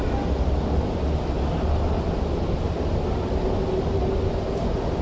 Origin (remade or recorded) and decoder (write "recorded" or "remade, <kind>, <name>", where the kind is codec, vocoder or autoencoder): recorded